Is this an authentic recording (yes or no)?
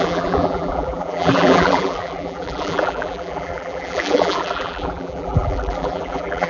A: no